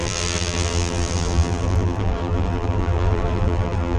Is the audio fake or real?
fake